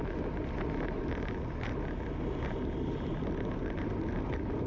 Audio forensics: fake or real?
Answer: real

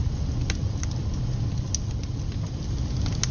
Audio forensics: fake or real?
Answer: real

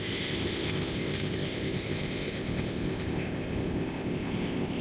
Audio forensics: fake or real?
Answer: fake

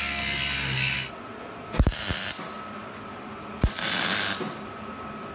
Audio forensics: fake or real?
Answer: real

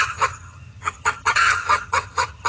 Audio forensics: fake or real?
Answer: fake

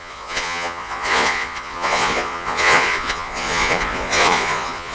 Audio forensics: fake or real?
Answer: fake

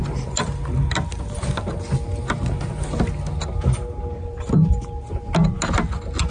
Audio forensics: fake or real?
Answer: real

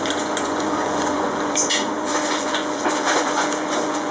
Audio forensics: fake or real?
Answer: fake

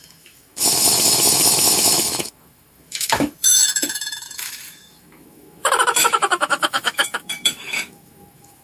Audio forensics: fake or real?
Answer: fake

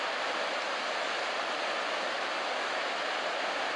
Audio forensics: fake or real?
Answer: real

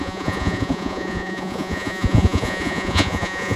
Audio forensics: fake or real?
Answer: fake